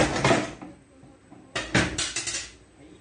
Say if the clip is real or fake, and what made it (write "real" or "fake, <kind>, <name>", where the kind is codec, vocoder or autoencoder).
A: real